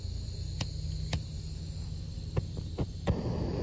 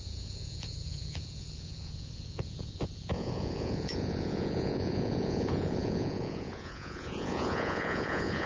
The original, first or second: first